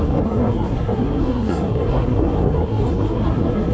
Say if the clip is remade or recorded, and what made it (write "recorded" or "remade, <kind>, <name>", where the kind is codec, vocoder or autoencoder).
remade, codec, SNAC